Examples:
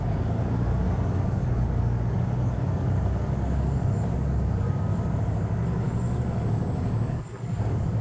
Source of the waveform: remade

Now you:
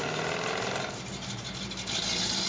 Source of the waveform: recorded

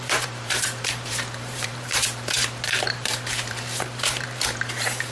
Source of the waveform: remade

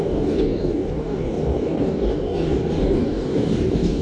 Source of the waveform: remade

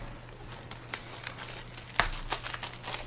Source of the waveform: recorded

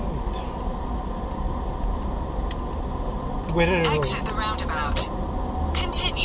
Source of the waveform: recorded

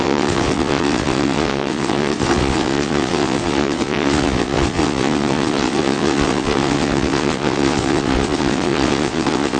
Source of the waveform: remade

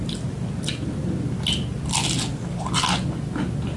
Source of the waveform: recorded